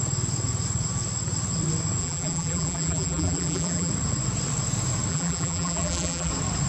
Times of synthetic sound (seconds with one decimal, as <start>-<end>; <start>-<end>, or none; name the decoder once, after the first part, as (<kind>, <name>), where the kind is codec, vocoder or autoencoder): 2.0-3.9 (vocoder, BigVGAN v2); 5.1-6.3